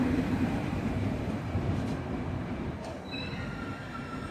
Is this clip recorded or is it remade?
remade